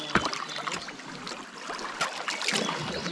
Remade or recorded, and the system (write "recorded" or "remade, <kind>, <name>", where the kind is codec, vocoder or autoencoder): recorded